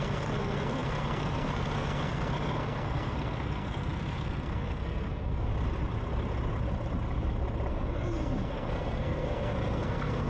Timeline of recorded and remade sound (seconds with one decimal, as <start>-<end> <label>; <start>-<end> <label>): 0.0-5.5 remade; 5.5-7.7 recorded; 7.7-10.3 remade